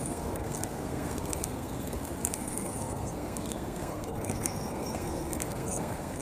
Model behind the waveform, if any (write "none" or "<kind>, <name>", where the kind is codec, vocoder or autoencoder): codec, SNAC